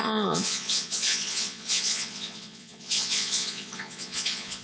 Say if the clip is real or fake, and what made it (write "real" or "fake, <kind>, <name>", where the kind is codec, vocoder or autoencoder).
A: fake, vocoder, Vocos